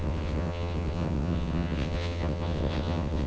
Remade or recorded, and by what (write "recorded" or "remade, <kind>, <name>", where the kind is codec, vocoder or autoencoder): remade, vocoder, WaveNeXt